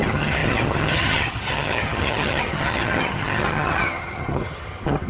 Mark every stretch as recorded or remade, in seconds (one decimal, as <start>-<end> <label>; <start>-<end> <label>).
0.0-5.1 remade